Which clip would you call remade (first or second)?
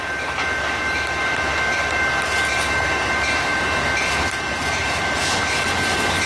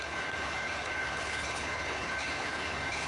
second